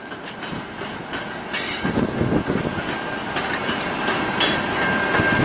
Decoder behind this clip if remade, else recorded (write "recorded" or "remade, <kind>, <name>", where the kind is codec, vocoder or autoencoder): recorded